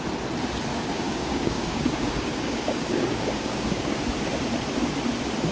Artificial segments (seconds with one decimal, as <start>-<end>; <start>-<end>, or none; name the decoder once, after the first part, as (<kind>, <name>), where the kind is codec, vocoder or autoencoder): 0.7-4.0 (codec, DAC)